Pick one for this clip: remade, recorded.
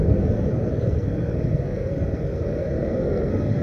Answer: remade